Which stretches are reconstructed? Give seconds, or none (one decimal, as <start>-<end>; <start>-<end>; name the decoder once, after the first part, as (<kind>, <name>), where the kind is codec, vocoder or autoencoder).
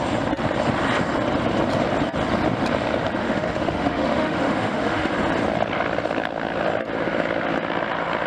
3.2-5.1 (autoencoder, DAC-VAE)